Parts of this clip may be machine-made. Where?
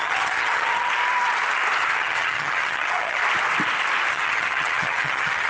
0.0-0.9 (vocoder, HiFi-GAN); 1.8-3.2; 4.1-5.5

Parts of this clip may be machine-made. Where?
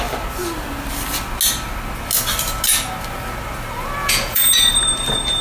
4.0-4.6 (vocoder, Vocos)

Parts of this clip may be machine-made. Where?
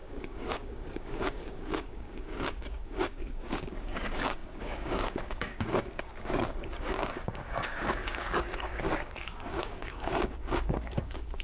0.0-11.4 (codec, DAC)